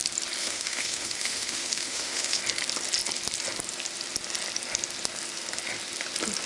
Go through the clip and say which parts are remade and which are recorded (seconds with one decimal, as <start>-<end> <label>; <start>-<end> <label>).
0.0-0.4 recorded; 0.4-2.4 remade; 2.4-6.5 recorded